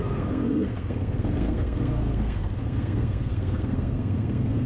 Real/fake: fake